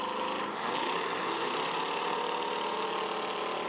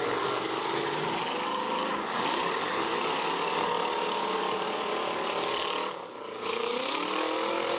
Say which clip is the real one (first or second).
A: first